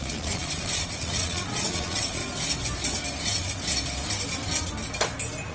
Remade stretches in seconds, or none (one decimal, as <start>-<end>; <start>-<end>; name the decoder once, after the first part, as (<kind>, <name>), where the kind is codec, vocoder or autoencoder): 0.0-2.2 (vocoder, Vocos)

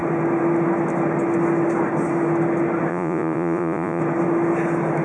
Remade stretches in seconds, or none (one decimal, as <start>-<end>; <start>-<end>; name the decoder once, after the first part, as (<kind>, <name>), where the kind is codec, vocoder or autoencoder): 2.9-4.0 (vocoder, Vocos)

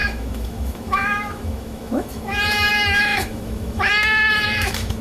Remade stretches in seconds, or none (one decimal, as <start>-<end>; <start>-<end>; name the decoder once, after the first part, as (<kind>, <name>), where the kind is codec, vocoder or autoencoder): 0.0-5.0 (autoencoder, DAC-VAE)

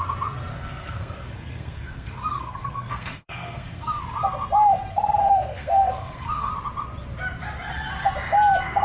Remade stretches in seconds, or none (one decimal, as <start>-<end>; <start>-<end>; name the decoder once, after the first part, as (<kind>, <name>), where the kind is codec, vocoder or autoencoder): 0.5-4.0 (codec, SNAC); 4.9-6.5